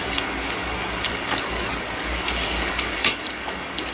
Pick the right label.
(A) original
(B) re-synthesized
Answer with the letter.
B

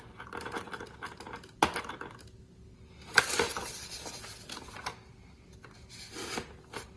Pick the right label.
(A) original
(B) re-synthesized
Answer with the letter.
A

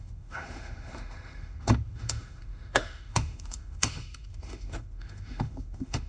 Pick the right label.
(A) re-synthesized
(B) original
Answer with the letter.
A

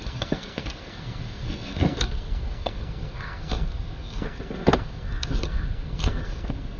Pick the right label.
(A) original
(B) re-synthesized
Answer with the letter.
B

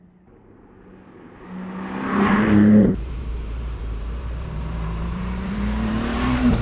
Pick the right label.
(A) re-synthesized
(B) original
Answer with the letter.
A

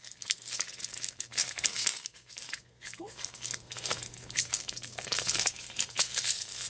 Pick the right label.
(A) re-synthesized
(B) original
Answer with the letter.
A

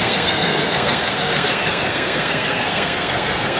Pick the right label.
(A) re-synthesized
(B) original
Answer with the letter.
A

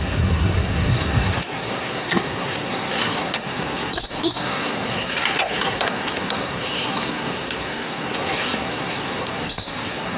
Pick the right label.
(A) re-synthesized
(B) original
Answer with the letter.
A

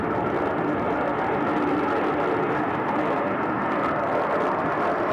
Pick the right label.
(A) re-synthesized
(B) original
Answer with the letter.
B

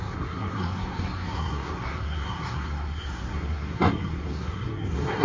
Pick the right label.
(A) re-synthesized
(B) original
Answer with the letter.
A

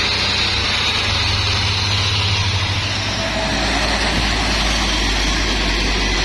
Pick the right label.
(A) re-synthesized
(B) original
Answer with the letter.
B